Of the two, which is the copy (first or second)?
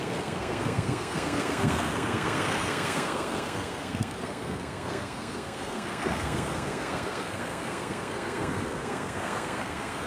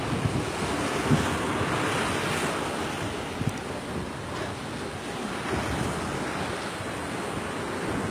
first